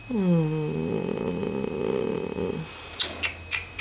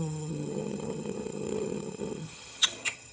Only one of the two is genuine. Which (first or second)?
first